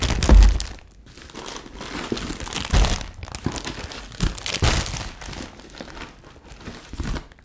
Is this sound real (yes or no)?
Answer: yes